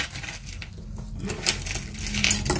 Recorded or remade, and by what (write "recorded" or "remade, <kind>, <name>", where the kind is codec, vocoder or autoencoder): recorded